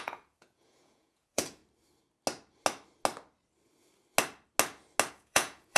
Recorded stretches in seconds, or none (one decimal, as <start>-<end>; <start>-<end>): 1.6-5.1

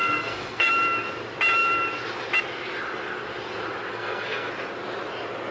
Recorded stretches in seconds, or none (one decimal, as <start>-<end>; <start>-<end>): 0.7-3.9; 4.5-5.5

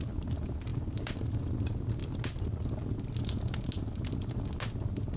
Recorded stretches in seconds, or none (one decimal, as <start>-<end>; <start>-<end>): 0.0-5.2

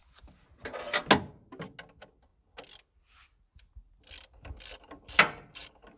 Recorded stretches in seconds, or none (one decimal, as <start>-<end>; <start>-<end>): 0.0-6.0

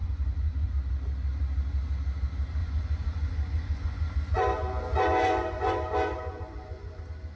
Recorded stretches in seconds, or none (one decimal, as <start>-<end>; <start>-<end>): 0.7-2.6; 7.0-7.4

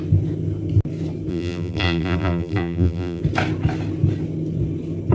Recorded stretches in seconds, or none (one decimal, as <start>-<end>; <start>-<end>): 0.0-1.3; 3.2-5.1

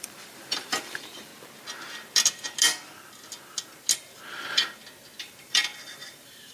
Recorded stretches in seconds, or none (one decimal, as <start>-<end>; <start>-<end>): 1.3-5.2